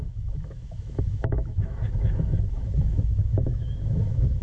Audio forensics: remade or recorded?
remade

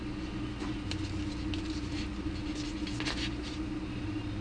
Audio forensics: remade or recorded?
recorded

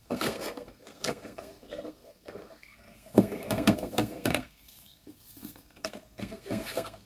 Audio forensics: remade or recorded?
remade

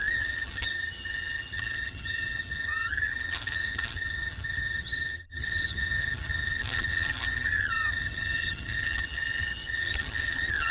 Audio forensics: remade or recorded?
remade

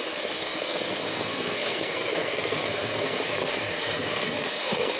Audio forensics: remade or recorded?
remade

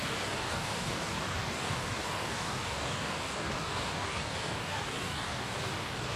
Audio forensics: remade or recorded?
remade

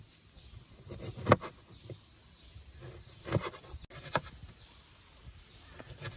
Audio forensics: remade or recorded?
recorded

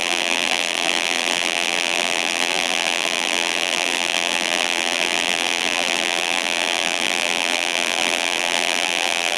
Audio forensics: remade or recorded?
remade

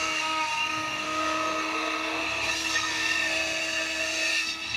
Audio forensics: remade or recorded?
remade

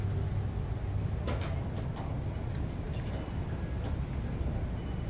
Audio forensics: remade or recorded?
recorded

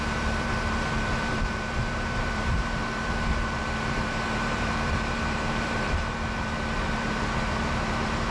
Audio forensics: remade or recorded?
remade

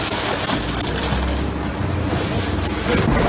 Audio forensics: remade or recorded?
recorded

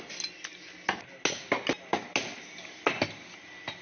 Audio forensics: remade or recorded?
recorded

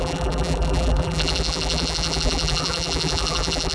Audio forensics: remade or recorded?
remade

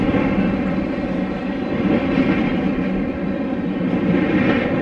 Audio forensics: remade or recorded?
remade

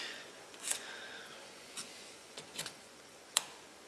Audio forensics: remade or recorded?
remade